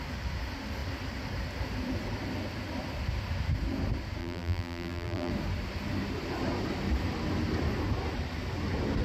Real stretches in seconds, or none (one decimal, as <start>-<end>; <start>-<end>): 0.0-4.2; 5.3-9.0